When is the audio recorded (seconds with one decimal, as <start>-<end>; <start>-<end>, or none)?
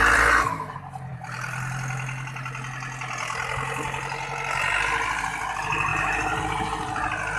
0.0-5.9; 6.4-7.4